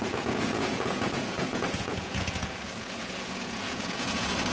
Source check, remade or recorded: remade